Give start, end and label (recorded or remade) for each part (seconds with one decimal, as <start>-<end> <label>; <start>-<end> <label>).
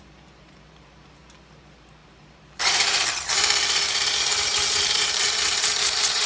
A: 0.0-6.3 remade